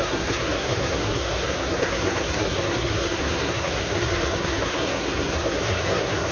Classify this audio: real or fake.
fake